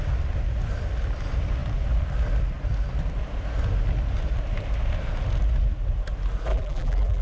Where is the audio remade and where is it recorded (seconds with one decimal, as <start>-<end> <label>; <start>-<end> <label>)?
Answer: 0.0-6.5 recorded; 6.5-7.2 remade